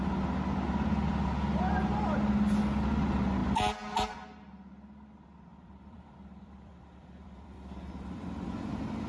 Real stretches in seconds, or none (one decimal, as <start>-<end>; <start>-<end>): 0.0-5.5